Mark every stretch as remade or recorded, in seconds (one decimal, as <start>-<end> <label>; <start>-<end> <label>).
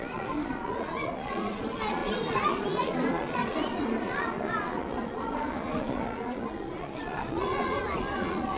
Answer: 0.0-8.6 remade